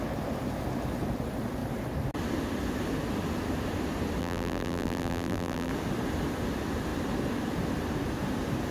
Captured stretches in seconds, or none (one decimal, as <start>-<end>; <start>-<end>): 0.0-4.2; 5.7-8.7